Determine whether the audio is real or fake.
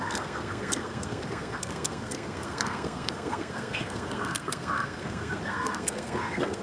fake